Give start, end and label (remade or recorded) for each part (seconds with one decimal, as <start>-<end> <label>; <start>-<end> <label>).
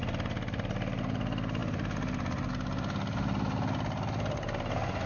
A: 0.0-5.1 recorded